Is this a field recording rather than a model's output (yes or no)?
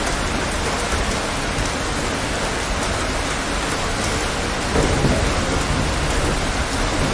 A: yes